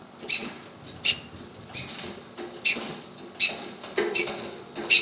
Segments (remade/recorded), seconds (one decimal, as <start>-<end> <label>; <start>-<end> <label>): 0.0-5.0 recorded